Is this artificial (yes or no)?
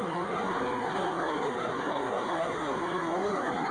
yes